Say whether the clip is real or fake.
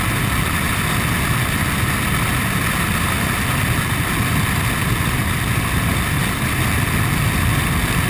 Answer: real